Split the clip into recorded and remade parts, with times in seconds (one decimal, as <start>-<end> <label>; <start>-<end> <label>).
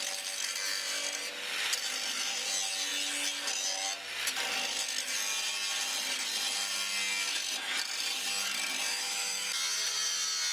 0.0-8.9 recorded; 8.9-9.5 remade; 9.5-10.5 recorded